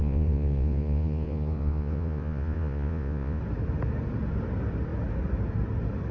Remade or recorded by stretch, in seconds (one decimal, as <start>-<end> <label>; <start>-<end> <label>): 0.0-3.4 remade; 3.4-6.1 recorded